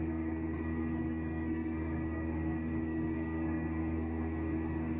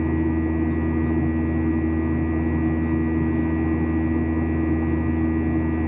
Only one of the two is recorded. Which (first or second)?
second